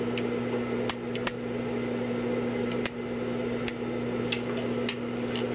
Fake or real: real